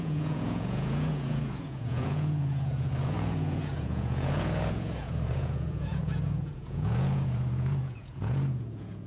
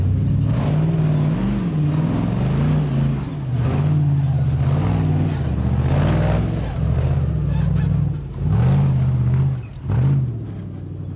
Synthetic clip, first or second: first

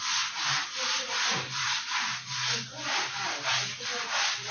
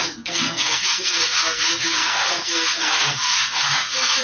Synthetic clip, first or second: second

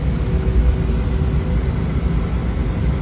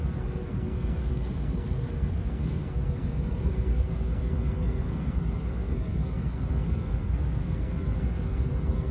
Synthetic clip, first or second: second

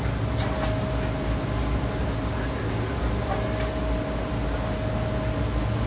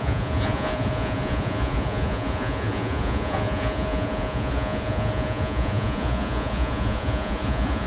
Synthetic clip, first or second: second